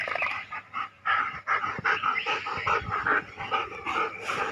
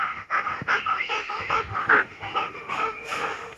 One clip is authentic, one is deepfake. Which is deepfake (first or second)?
second